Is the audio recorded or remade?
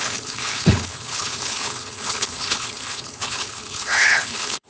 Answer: remade